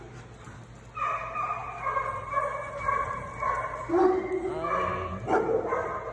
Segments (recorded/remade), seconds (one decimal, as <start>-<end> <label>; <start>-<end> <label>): 0.0-6.1 recorded